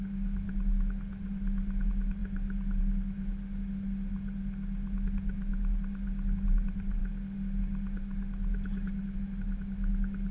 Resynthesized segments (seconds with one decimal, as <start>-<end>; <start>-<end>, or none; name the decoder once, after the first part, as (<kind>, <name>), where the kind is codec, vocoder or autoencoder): none